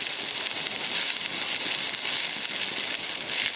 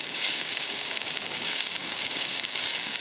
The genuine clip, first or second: first